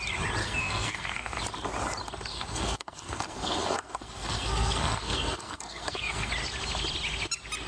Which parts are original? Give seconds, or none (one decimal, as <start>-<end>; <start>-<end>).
0.0-0.4; 1.4-2.3; 6.3-7.7